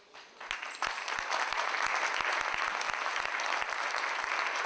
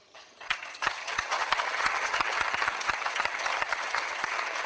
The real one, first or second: first